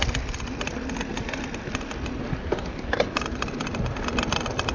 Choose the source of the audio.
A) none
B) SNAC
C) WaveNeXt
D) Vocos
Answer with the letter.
A